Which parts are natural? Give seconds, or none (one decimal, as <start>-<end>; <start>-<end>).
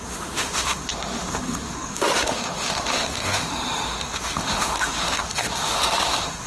none